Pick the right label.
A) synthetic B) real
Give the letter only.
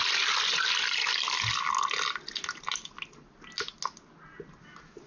B